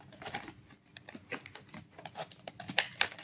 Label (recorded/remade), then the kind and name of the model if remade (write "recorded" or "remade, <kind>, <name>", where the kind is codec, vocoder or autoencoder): recorded